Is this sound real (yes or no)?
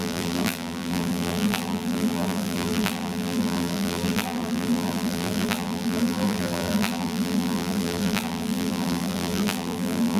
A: no